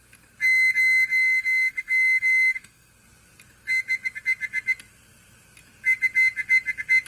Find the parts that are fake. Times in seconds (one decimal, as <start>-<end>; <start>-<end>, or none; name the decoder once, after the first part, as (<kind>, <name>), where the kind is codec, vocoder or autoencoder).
1.1-2.9 (autoencoder, DAC-VAE)